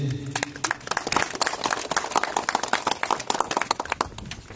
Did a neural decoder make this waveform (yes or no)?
no